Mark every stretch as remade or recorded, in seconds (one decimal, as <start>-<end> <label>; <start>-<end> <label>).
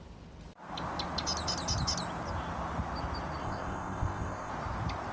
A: 0.0-3.4 recorded; 3.4-4.5 remade; 4.5-5.1 recorded